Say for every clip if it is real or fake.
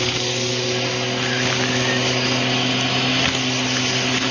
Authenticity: real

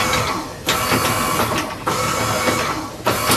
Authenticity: real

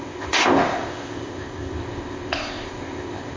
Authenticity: fake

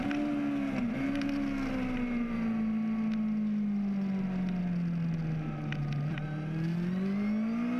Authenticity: real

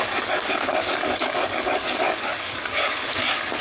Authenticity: fake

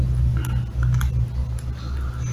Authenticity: real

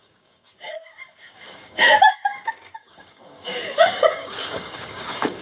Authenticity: fake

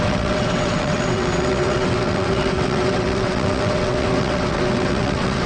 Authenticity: fake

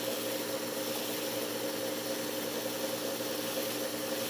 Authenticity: real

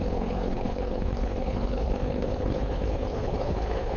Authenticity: fake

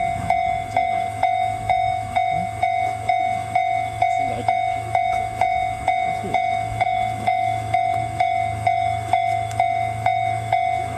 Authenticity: fake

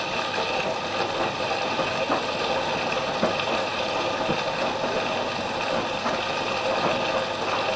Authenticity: real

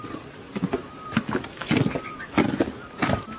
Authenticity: real